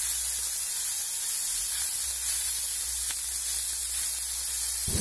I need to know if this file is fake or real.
real